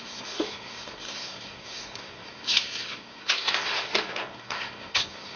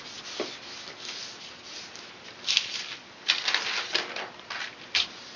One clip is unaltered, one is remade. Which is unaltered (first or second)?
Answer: second